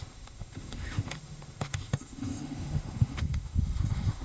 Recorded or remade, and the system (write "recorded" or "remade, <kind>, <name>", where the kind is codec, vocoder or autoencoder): remade, autoencoder, DAC-VAE